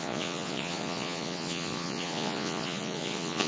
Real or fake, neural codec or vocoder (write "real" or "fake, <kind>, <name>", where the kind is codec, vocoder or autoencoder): fake, vocoder, Vocos